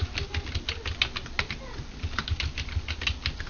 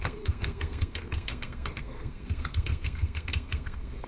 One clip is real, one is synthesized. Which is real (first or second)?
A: first